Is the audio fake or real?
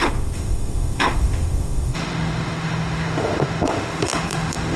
fake